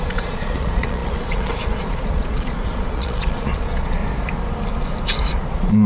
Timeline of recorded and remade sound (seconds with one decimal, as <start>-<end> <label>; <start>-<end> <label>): 0.0-4.0 remade; 4.0-5.3 recorded; 5.3-5.9 remade